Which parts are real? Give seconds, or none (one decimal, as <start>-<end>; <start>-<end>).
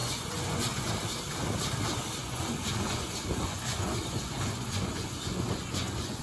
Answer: 0.9-2.2